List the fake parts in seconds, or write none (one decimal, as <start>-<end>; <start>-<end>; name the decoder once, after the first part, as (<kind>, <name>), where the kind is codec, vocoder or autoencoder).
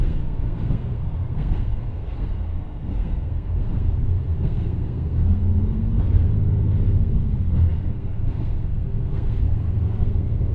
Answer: 0.0-10.5 (codec, SNAC)